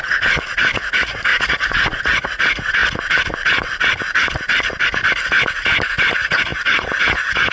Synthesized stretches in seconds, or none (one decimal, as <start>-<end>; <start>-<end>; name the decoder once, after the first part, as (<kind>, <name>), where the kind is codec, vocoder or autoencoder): 0.0-2.8 (vocoder, Vocos); 6.1-7.5